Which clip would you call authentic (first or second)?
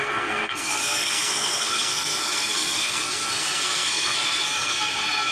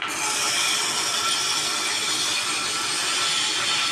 second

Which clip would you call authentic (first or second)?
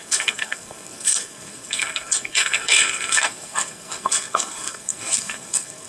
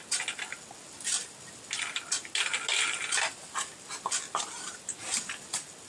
second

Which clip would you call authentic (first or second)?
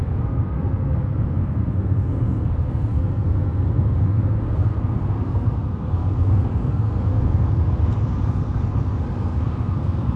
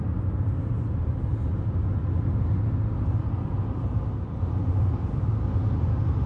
second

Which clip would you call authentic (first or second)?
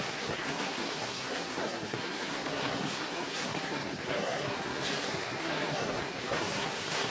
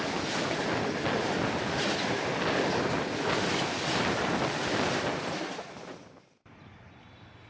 second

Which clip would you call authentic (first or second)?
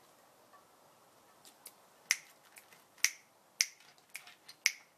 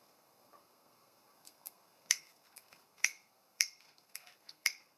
first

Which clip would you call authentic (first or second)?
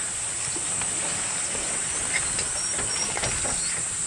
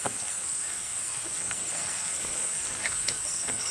first